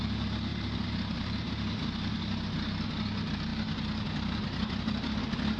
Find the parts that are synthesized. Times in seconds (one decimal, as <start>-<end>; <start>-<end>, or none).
0.5-1.5